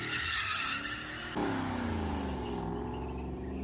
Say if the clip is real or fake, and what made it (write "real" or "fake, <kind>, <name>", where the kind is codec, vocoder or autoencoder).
real